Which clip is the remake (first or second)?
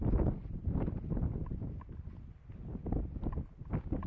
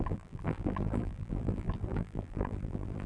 second